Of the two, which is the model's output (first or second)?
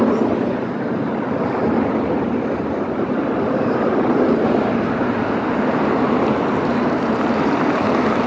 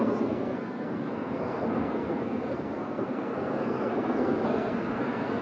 second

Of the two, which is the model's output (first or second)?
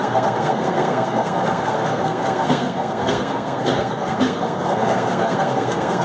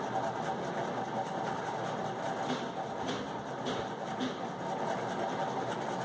first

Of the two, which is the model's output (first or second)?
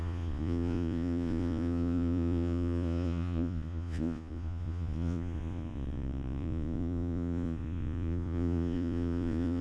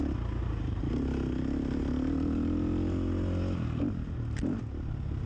first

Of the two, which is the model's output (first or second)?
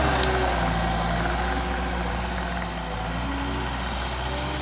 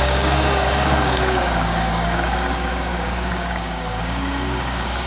second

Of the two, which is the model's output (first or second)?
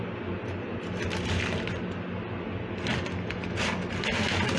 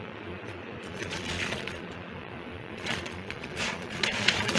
second